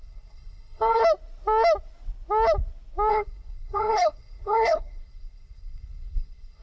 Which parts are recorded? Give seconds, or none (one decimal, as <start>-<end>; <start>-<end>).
1.0-3.1